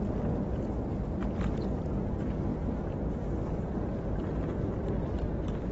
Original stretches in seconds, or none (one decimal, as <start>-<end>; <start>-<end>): 0.0-5.7